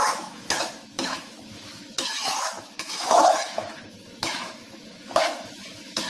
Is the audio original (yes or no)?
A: no